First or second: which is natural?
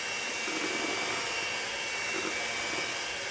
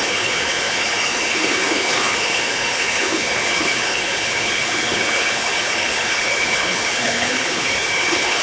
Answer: first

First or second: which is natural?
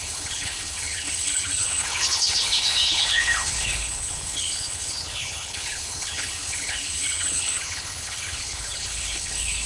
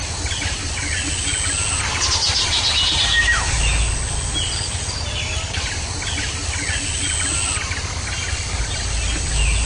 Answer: second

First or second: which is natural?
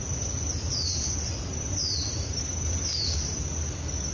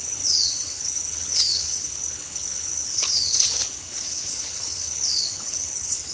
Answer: first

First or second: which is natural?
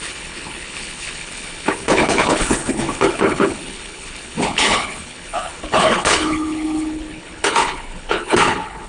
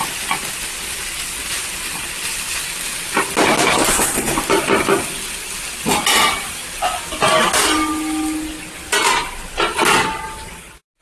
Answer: second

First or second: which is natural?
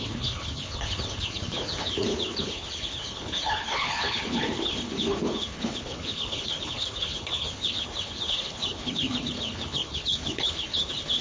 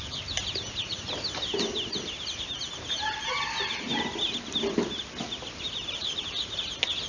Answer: second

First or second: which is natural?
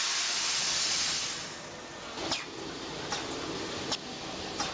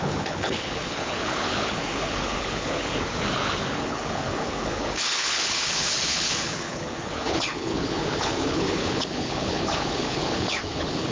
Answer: first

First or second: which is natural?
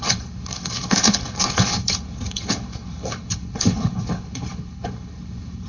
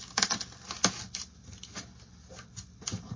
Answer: second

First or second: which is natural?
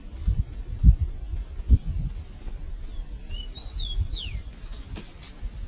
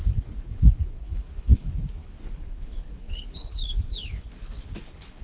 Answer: first